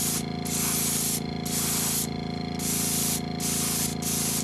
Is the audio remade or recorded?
recorded